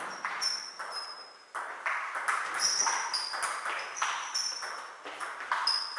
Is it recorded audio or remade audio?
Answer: recorded